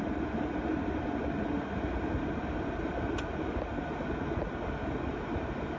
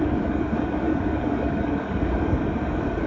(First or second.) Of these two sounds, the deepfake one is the second